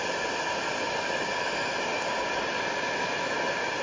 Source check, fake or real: real